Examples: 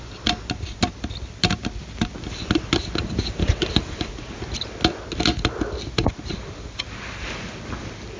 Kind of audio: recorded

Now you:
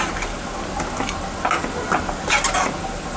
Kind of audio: recorded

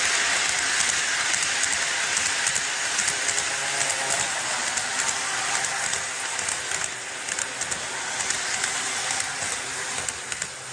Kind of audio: recorded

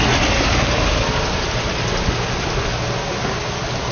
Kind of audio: recorded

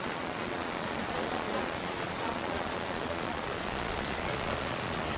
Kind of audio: remade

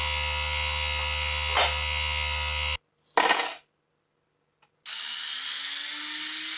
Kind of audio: recorded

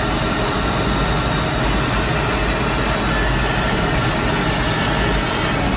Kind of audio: recorded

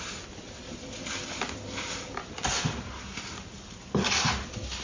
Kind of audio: recorded